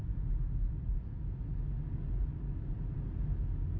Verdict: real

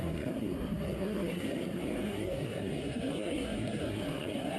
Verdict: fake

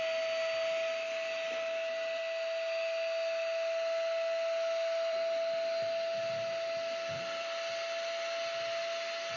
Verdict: real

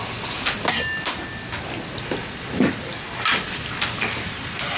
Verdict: real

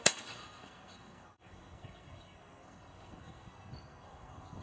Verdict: fake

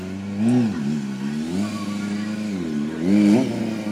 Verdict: real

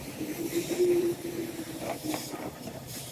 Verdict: fake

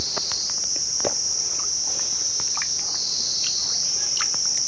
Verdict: real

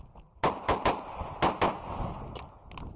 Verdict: real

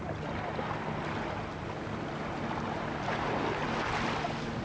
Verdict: real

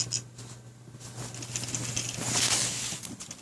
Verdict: real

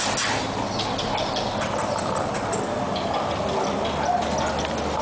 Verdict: real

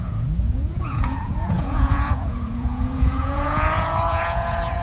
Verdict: fake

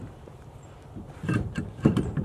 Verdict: fake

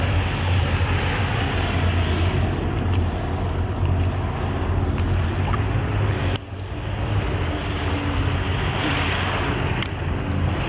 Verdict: real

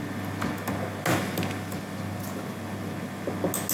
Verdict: real